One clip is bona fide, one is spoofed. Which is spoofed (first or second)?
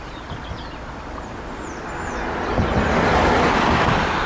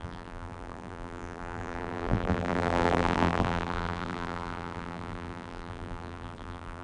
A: second